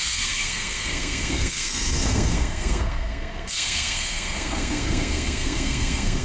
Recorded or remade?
remade